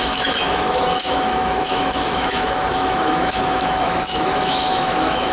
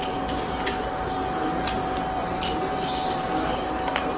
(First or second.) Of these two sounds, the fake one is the first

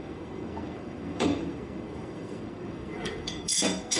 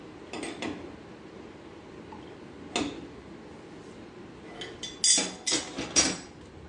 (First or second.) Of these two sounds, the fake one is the first